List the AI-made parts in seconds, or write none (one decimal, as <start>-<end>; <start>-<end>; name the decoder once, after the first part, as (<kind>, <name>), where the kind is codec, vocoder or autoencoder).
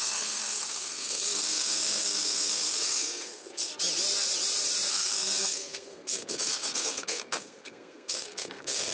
0.0-3.7 (codec, SNAC); 4.9-8.9